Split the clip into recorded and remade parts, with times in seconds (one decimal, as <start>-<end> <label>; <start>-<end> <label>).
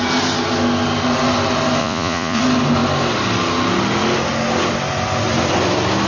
0.0-1.8 recorded; 1.8-2.4 remade; 2.4-6.1 recorded